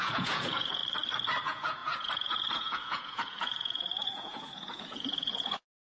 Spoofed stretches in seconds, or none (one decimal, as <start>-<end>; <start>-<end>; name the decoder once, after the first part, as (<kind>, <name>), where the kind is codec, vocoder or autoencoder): 0.0-0.8 (vocoder, Vocos); 1.4-5.9